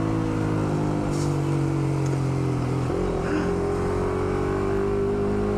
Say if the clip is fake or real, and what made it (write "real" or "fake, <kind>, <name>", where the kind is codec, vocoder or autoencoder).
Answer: real